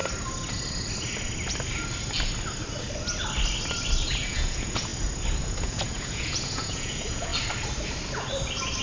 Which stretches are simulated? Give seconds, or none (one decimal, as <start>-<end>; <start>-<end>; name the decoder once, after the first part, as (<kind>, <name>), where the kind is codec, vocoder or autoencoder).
4.1-4.9 (vocoder, Vocos); 5.4-7.3